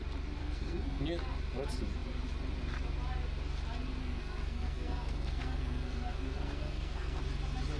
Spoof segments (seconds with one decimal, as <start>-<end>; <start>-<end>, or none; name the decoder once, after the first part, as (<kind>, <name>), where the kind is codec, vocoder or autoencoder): 0.4-1.0 (codec, SNAC); 4.0-7.2